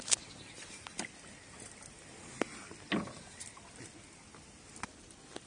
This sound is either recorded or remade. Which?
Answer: recorded